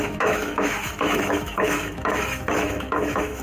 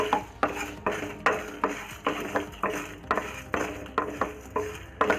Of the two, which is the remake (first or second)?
first